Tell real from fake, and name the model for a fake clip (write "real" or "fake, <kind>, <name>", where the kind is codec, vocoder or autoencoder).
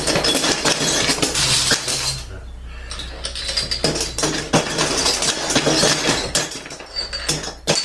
real